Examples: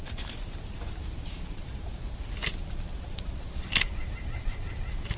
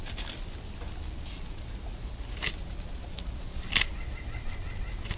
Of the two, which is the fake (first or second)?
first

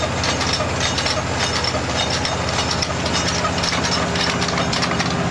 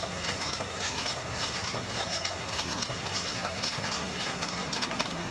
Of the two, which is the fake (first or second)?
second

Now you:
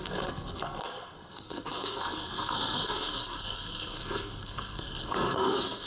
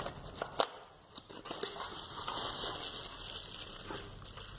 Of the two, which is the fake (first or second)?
first